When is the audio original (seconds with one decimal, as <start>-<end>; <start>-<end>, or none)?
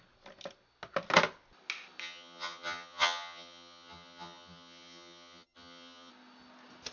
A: 0.0-2.0; 6.1-6.9